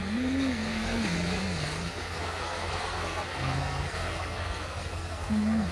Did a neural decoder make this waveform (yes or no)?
yes